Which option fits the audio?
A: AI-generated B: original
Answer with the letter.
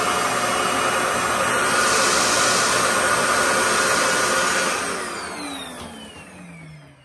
B